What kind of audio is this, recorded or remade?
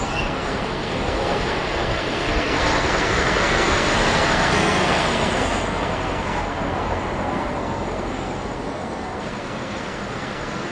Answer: remade